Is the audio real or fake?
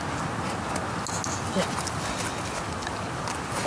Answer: real